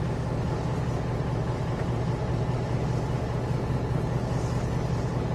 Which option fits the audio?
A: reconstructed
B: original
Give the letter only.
B